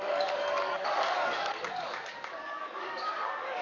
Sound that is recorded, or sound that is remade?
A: remade